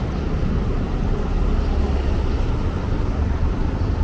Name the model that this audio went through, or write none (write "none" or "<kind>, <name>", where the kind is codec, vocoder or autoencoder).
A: none